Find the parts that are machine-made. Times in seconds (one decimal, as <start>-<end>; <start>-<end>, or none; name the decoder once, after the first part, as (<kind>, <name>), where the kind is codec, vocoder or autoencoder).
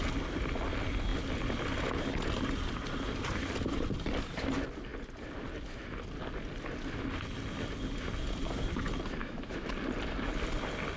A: 9.2-9.7 (autoencoder, DAC-VAE)